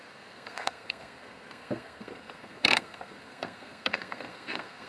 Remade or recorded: remade